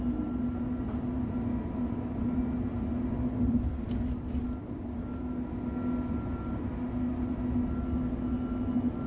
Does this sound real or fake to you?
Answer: real